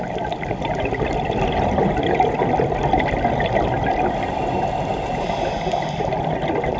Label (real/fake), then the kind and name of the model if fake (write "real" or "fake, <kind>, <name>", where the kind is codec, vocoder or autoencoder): real